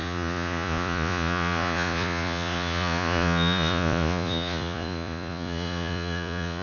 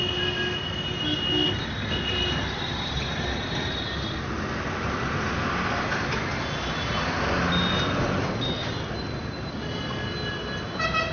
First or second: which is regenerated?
first